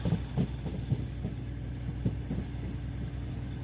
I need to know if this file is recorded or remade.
recorded